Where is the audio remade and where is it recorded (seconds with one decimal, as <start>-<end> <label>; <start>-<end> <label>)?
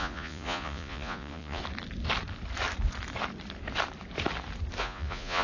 0.0-1.6 remade; 1.6-4.8 recorded; 4.8-5.4 remade